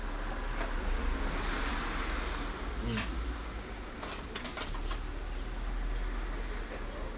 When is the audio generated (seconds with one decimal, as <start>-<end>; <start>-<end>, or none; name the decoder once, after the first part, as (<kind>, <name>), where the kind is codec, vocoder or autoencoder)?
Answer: none